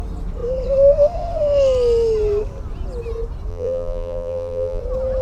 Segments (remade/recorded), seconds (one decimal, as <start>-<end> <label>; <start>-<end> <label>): 0.0-3.5 recorded; 3.5-4.8 remade; 4.8-5.2 recorded